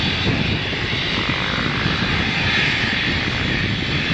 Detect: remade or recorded recorded